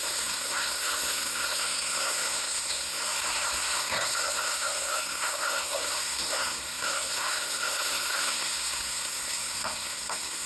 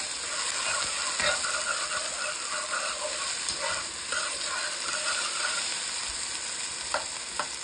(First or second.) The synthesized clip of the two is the first